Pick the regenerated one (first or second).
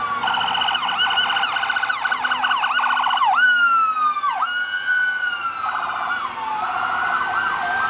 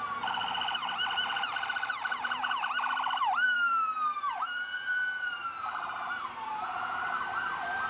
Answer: second